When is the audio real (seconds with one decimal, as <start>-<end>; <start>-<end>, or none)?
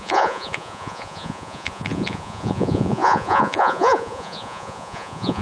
none